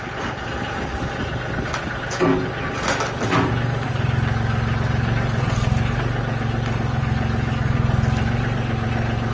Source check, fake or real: real